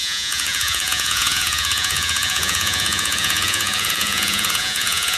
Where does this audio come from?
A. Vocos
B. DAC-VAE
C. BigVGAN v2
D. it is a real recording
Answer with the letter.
A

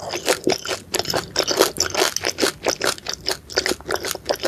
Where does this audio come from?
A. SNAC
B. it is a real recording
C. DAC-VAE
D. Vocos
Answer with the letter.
B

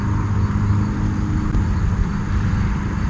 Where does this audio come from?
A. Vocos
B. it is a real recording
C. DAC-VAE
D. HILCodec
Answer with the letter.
B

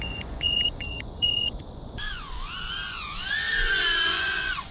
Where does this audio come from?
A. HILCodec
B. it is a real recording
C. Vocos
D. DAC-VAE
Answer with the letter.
C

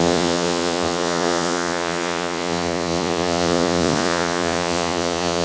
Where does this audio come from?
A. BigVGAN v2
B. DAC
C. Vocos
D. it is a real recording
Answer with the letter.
C